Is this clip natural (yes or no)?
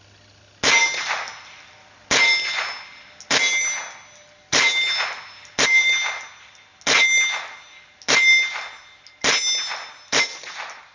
yes